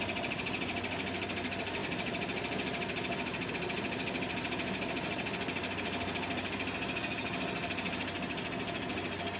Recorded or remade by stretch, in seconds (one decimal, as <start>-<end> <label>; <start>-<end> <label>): 0.0-9.4 recorded